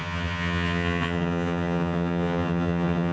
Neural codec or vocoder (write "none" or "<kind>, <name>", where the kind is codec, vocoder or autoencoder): vocoder, HiFi-GAN